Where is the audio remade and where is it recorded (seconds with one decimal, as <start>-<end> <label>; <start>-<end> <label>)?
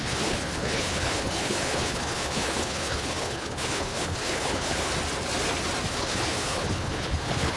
0.0-4.9 remade; 4.9-5.9 recorded; 5.9-7.6 remade